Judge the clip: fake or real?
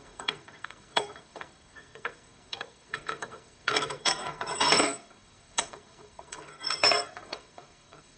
fake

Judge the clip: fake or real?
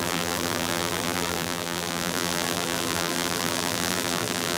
fake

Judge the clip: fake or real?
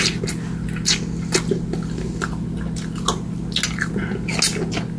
real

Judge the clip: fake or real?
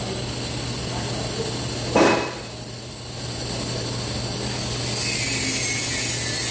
real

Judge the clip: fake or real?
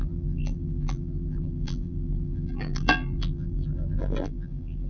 fake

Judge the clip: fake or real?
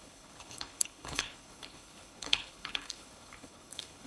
fake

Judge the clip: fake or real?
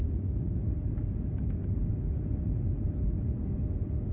real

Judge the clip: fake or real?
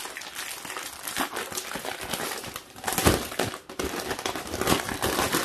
real